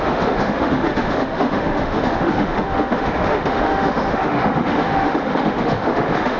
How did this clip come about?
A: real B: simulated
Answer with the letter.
B